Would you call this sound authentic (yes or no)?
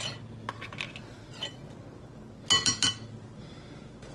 yes